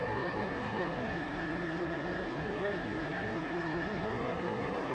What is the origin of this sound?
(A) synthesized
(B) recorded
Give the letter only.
A